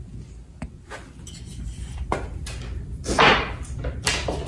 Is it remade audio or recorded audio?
recorded